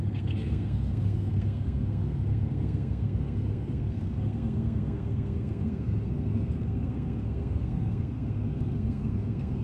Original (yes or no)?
no